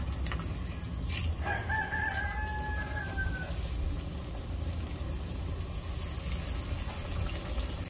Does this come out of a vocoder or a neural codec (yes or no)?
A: no